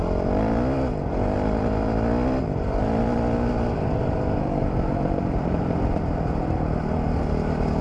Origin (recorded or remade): recorded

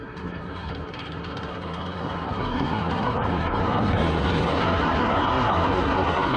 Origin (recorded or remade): remade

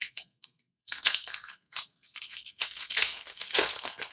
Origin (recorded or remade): remade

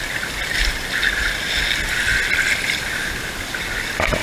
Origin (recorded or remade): recorded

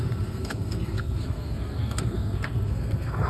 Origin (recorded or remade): remade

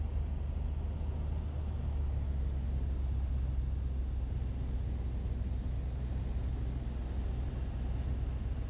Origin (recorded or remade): recorded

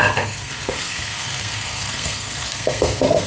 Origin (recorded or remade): remade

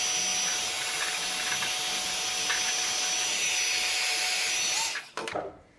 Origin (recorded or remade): recorded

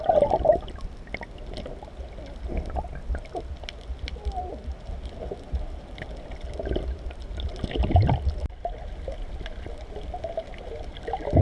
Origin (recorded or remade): recorded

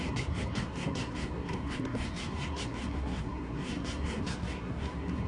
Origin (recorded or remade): remade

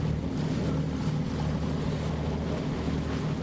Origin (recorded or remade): recorded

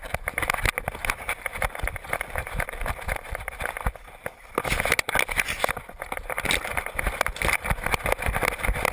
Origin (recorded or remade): recorded